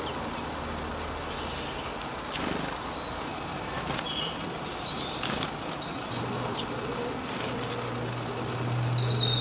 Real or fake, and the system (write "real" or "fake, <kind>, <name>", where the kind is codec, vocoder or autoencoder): real